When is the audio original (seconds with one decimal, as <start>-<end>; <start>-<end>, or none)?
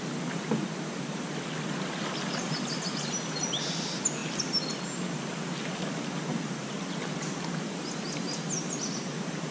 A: 0.0-9.5